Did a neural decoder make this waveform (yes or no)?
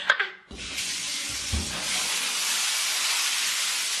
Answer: yes